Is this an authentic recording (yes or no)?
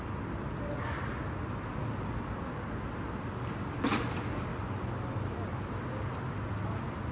yes